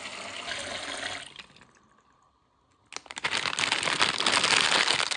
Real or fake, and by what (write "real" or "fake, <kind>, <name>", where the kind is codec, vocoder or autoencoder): real